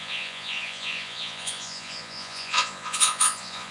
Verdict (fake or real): fake